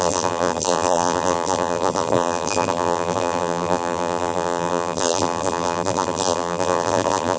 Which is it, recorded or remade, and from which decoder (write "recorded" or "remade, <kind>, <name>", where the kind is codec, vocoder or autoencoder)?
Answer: remade, vocoder, BigVGAN v2